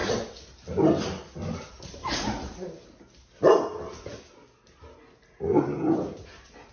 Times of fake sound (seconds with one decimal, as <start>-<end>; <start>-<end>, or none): none